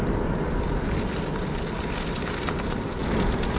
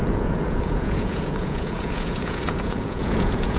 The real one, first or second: first